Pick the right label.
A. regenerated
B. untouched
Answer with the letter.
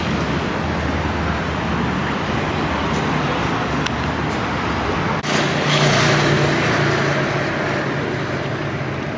B